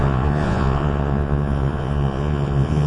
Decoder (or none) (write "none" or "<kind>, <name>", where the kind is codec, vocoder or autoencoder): vocoder, Vocos